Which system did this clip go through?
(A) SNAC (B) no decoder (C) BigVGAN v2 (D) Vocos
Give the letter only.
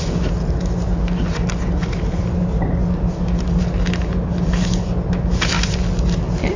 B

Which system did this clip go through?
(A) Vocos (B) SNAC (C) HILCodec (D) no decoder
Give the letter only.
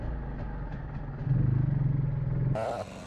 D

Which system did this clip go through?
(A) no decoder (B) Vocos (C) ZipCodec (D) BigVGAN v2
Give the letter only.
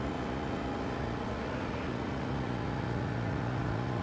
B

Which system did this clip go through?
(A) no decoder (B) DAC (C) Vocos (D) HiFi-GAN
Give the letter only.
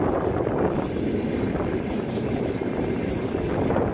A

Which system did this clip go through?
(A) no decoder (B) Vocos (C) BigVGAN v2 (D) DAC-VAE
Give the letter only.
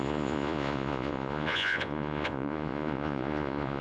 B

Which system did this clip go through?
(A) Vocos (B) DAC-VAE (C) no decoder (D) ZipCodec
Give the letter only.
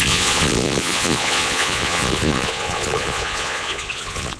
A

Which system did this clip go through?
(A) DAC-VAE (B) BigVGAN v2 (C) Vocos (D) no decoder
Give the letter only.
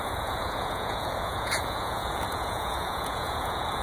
C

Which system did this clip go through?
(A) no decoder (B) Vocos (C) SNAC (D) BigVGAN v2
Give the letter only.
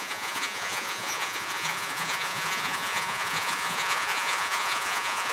B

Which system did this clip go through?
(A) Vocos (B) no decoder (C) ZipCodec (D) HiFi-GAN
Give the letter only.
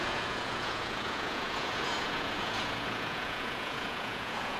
A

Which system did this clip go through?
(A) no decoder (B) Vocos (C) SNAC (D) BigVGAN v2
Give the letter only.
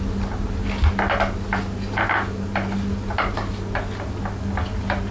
A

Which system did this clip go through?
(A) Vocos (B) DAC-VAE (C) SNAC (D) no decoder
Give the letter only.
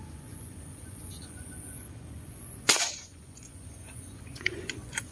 A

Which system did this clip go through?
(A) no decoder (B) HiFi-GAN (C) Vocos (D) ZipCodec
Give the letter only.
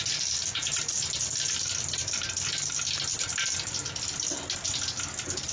A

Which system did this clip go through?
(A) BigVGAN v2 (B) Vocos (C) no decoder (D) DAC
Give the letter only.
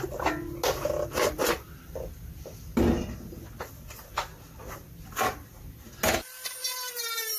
C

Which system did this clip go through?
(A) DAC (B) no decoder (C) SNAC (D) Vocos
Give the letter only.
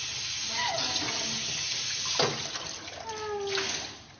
B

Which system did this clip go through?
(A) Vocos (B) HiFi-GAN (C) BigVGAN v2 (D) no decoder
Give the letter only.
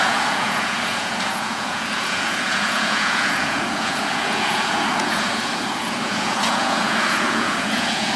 A